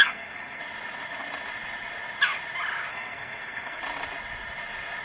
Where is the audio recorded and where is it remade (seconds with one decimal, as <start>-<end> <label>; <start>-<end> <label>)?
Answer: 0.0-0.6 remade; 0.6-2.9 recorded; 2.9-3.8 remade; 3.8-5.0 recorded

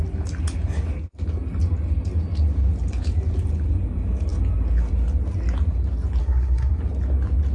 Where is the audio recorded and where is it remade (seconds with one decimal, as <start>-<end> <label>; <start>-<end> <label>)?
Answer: 0.0-6.2 recorded; 6.2-6.8 remade; 6.8-7.5 recorded

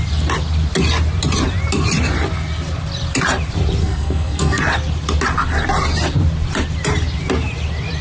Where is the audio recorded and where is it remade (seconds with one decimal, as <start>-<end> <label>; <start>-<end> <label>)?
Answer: 0.0-3.8 recorded; 3.8-4.6 remade; 4.6-8.0 recorded

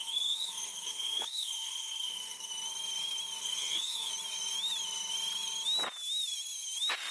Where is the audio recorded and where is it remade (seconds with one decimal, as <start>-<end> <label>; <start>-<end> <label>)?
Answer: 0.0-2.5 remade; 2.5-3.4 recorded; 3.4-4.1 remade; 4.1-7.1 recorded